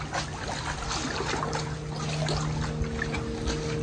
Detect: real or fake real